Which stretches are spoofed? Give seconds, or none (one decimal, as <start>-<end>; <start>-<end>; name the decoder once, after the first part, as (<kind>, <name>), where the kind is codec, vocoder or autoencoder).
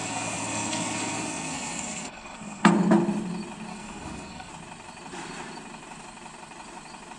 0.0-2.7 (codec, SNAC); 3.7-4.5